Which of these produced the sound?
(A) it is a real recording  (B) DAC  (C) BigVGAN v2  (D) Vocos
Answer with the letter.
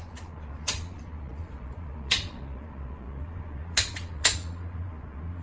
D